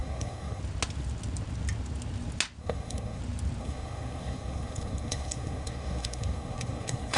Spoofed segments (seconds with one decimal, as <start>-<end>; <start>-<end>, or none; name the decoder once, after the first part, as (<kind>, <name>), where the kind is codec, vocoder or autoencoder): 0.0-0.6 (codec, SNAC); 2.6-3.2; 3.6-7.2